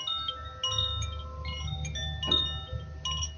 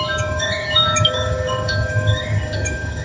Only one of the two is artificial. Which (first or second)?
second